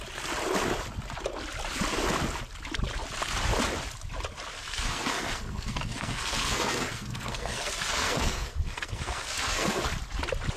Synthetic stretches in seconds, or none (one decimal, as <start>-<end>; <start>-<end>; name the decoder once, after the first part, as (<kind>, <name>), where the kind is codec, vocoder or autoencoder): 4.5-9.8 (codec, SNAC)